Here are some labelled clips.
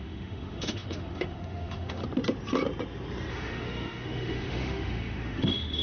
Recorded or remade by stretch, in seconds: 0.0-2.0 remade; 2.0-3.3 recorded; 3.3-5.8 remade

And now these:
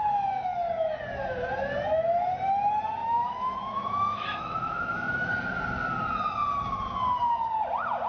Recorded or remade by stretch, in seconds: 0.0-3.0 recorded; 3.0-5.3 remade; 5.3-8.1 recorded

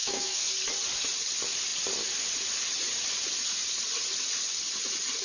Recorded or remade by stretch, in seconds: 0.0-0.5 remade; 0.5-5.2 recorded

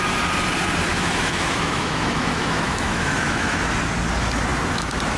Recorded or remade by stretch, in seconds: 0.0-0.9 recorded; 0.9-3.6 remade; 3.6-5.2 recorded

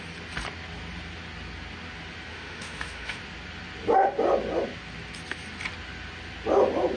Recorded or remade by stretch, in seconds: 0.0-2.3 recorded; 2.3-3.2 remade; 3.2-7.0 recorded

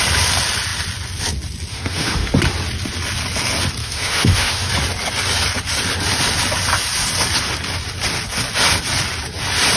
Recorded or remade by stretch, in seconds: 0.0-1.7 recorded; 1.7-2.3 remade; 2.3-3.8 recorded; 3.8-4.7 remade; 4.7-9.8 recorded

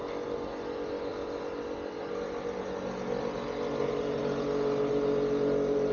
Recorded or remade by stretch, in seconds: 0.0-5.9 recorded

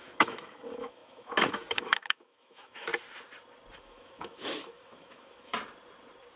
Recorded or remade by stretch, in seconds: 0.0-2.9 remade; 2.9-3.8 recorded; 3.8-5.5 remade; 5.5-6.4 recorded